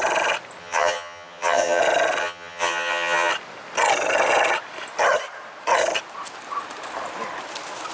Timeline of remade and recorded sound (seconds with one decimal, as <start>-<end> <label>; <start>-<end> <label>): 0.0-0.6 recorded; 0.6-1.8 remade; 1.8-2.2 recorded; 2.2-3.3 remade; 3.3-7.9 recorded